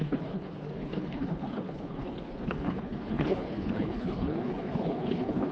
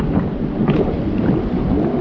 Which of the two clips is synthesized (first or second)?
first